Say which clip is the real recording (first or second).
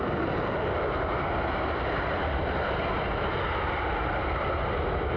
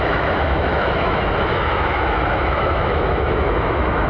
first